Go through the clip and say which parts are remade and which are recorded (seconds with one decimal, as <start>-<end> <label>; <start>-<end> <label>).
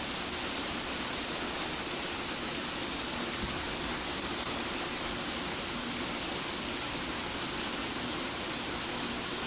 0.0-7.8 recorded; 7.8-8.8 remade; 8.8-9.5 recorded